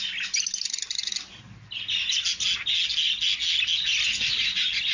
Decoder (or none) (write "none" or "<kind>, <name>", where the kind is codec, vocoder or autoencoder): none